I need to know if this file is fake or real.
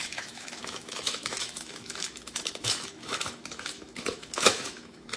fake